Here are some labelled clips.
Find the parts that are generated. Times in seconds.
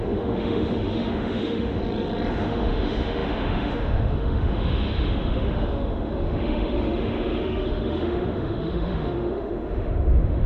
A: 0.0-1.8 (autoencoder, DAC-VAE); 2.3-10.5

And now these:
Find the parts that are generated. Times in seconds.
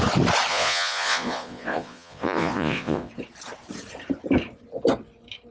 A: 0.5-3.1 (vocoder, Vocos)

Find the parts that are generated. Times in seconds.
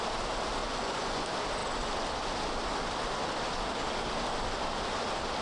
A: 0.6-1.2 (vocoder, Vocos)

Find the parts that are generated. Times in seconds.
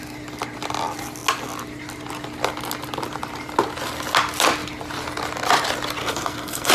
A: 6.0-6.7 (codec, SNAC)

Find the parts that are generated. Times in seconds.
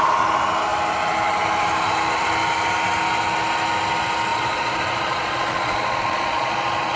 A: 4.3-7.0 (vocoder, Vocos)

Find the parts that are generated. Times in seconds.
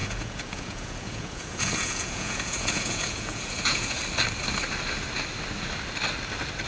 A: 0.0-4.0 (vocoder, Vocos)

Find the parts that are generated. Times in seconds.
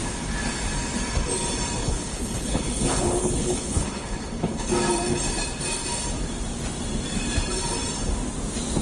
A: 1.8-4.7 (codec, HILCodec)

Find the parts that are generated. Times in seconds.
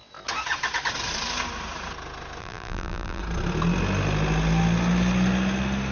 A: 2.4-3.2 (vocoder, BigVGAN v2)